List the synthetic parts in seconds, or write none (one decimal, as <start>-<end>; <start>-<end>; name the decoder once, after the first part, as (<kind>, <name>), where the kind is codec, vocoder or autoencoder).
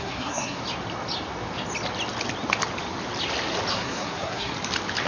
0.0-0.6 (codec, SNAC); 3.7-4.5